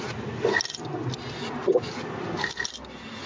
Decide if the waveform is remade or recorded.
recorded